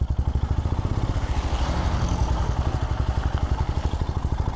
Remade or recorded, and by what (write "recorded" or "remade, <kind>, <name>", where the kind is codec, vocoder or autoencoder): recorded